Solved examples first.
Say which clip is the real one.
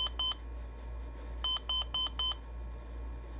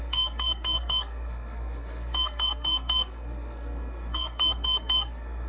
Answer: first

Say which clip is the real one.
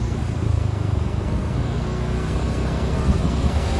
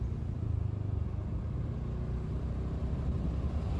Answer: second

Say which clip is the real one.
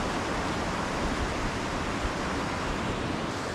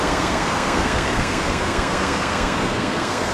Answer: first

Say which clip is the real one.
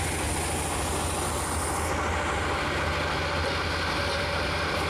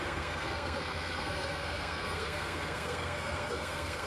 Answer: first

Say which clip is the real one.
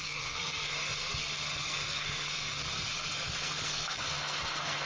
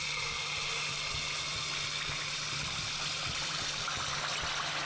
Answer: second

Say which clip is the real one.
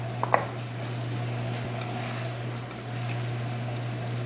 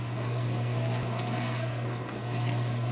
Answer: first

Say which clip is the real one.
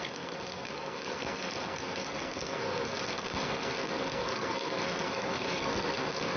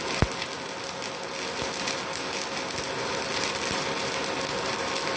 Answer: second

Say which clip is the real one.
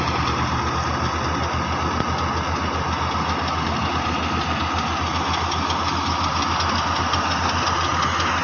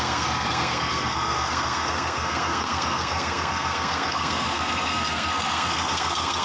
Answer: first